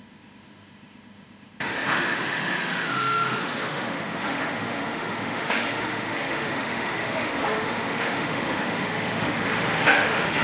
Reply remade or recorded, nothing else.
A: remade